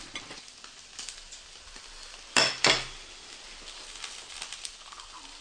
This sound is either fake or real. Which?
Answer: real